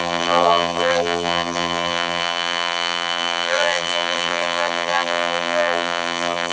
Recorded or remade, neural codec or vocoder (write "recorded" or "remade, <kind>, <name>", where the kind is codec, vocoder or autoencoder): remade, vocoder, BigVGAN v2